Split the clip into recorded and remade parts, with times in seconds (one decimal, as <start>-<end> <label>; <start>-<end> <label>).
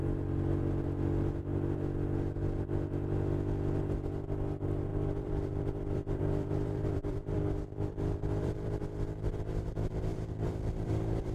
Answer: 0.0-4.9 recorded; 4.9-8.8 remade; 8.8-10.1 recorded; 10.1-11.3 remade